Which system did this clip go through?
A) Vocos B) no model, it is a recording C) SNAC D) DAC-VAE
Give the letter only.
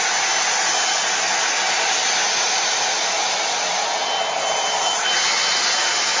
B